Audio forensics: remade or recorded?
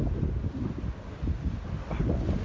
recorded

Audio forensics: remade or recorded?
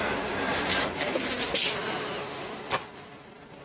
recorded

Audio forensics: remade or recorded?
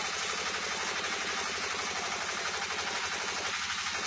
recorded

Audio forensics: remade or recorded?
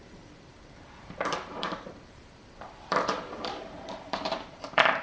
remade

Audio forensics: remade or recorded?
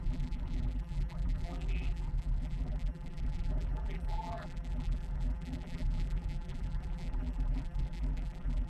remade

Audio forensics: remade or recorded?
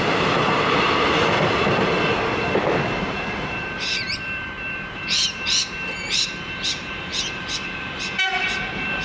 remade